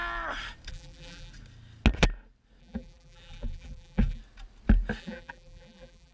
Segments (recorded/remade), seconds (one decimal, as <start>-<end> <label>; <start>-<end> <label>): 0.0-0.7 recorded; 0.7-1.3 remade; 1.3-2.6 recorded; 2.6-4.2 remade; 4.2-5.0 recorded; 5.0-6.1 remade